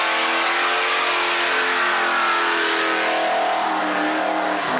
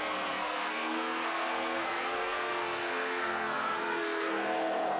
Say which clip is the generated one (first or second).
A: second